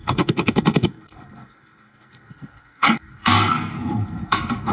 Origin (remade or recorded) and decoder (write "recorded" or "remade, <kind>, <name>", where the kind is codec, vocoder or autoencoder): remade, codec, SNAC